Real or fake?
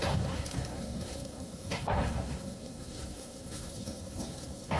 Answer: fake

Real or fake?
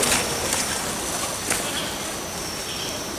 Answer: real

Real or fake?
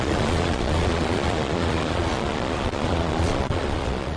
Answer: fake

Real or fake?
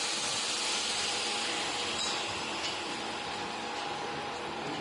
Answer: real